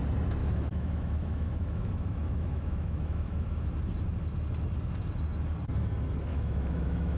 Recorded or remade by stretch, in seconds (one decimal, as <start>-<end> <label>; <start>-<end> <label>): 0.0-0.4 recorded; 0.4-3.7 remade; 3.7-6.3 recorded; 6.3-7.2 remade